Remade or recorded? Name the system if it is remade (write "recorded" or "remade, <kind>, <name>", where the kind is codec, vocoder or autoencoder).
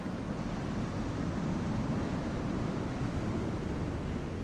recorded